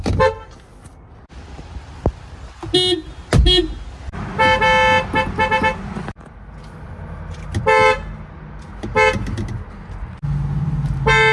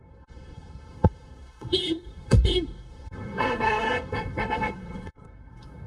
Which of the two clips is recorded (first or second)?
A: first